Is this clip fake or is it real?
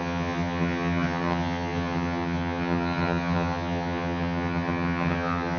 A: fake